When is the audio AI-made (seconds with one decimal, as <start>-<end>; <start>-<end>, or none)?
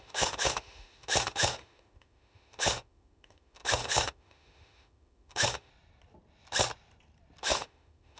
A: 0.0-5.7; 7.4-8.2